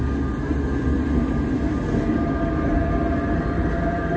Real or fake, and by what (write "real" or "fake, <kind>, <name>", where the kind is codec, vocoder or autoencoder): real